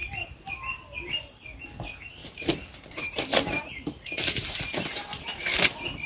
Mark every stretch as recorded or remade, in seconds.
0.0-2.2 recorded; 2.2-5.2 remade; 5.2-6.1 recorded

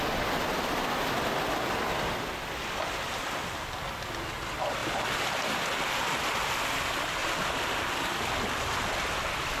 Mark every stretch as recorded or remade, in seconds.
0.0-7.2 recorded; 7.2-7.9 remade; 7.9-9.6 recorded